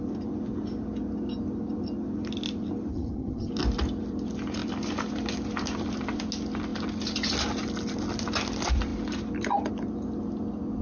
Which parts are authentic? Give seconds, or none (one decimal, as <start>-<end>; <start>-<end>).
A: 0.0-2.9; 3.5-10.8